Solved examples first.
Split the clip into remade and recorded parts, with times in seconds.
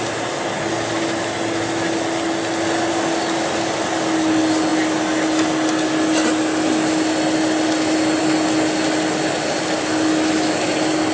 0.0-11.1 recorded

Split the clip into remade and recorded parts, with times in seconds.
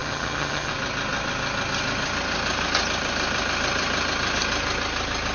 0.0-0.7 remade; 0.7-5.3 recorded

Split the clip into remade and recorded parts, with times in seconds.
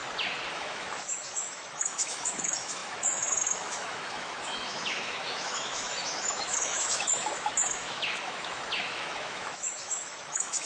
0.0-0.5 recorded; 0.5-10.7 remade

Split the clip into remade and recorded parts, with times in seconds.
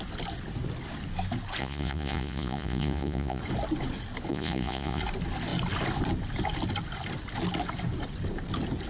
0.0-1.6 recorded; 1.6-3.4 remade; 3.4-4.3 recorded; 4.3-5.0 remade; 5.0-8.9 recorded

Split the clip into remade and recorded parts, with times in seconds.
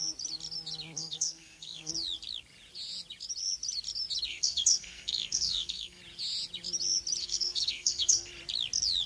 0.0-1.0 recorded; 1.0-1.9 remade; 1.9-4.3 recorded; 4.3-6.0 remade; 6.0-7.2 recorded; 7.2-8.3 remade; 8.3-9.1 recorded